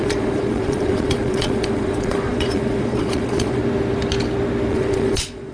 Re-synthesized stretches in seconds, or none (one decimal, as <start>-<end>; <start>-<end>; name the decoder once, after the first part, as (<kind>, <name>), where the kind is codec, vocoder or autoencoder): 0.0-3.6 (vocoder, Vocos); 4.7-5.5